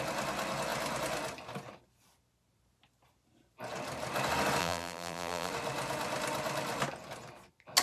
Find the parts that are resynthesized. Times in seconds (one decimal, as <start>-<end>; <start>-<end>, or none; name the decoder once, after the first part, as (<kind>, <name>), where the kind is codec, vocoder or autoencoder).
4.6-5.5 (vocoder, BigVGAN v2)